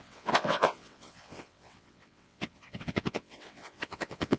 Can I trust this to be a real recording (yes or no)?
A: no